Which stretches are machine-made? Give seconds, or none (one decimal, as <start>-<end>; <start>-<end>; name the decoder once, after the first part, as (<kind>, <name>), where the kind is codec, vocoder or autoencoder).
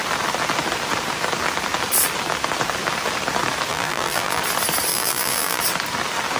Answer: 3.7-4.4 (vocoder, BigVGAN v2); 4.9-5.6